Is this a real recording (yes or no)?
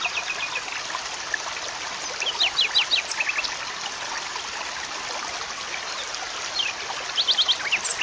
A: yes